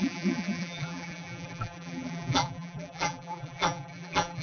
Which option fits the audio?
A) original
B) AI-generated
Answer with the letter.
B